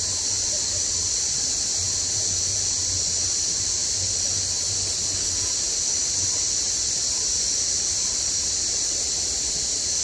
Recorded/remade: recorded